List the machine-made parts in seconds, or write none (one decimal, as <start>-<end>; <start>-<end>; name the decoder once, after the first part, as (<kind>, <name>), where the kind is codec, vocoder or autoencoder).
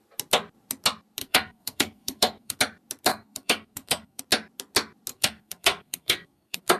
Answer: 1.2-2.6 (codec, SNAC); 3.1-4.2; 5.1-6.8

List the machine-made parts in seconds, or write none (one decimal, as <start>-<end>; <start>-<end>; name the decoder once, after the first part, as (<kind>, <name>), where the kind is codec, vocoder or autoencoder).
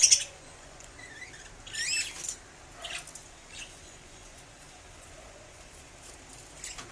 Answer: 0.0-1.1 (vocoder, Vocos); 3.2-5.9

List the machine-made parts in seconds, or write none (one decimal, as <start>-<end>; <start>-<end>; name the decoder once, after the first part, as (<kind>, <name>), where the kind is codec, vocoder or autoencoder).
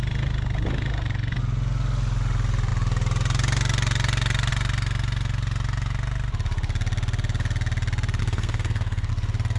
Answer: 8.2-9.1 (codec, SNAC)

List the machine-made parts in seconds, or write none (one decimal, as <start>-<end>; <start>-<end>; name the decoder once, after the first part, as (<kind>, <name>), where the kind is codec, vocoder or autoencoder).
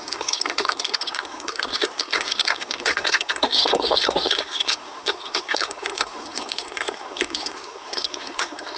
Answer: 0.0-8.8 (codec, SNAC)